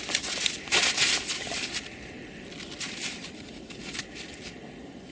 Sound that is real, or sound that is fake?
real